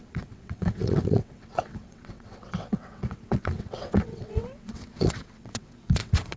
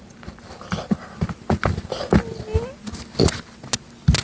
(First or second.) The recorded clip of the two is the second